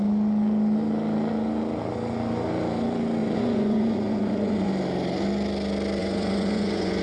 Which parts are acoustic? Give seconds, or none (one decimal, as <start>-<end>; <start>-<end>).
0.0-3.2; 4.7-6.0